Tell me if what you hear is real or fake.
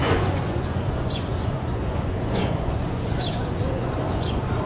fake